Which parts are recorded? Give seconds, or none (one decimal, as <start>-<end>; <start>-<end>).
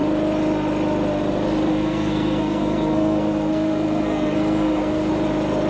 0.0-1.7; 5.1-5.7